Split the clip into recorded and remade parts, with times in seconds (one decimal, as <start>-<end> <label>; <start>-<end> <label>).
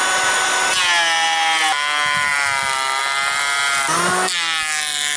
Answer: 0.0-5.2 recorded